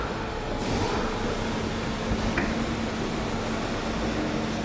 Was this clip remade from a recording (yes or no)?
no